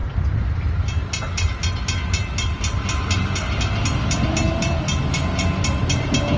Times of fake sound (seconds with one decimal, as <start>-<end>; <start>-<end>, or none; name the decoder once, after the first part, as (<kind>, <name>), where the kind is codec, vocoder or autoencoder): none